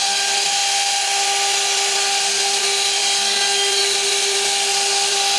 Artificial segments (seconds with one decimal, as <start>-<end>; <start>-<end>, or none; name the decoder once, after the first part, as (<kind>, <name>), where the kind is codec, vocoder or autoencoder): none